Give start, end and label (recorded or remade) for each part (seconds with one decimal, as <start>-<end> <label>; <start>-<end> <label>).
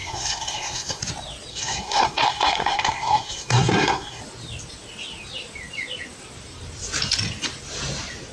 0.0-1.0 remade; 1.0-1.5 recorded; 1.5-4.2 remade; 4.2-8.3 recorded